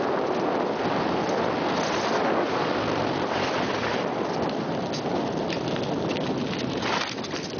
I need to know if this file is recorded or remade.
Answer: recorded